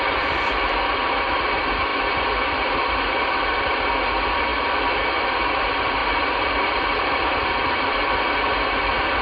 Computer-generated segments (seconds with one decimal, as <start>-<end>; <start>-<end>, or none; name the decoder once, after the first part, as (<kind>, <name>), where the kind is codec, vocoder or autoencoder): 0.0-1.9 (vocoder, BigVGAN v2); 3.5-4.5; 5.5-9.2